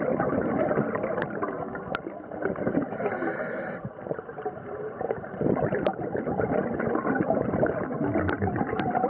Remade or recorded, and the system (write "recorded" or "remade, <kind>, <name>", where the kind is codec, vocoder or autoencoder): recorded